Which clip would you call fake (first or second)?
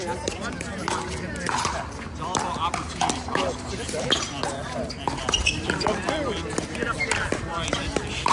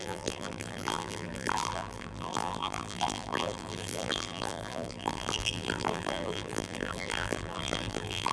second